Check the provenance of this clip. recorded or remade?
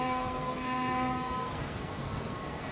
remade